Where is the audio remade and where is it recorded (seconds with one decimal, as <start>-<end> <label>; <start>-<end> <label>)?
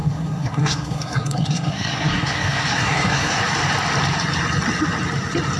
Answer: 0.0-3.4 remade; 3.4-5.6 recorded